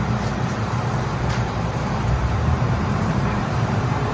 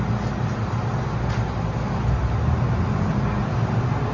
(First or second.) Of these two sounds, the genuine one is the second